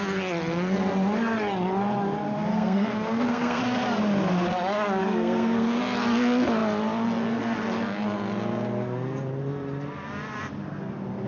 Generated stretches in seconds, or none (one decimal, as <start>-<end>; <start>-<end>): 2.5-3.6; 5.0-5.8